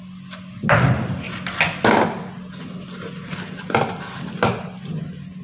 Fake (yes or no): no